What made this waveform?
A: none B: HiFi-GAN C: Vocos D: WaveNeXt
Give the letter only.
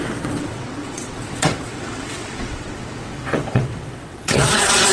D